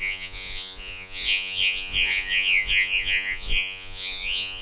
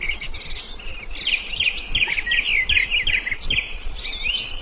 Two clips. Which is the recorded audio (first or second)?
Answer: second